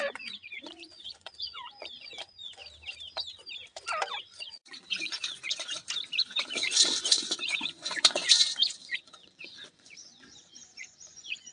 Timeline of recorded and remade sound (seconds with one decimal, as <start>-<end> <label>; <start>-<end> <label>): 0.0-2.6 remade; 2.6-4.2 recorded; 4.2-5.8 remade; 5.8-6.5 recorded; 6.5-11.5 remade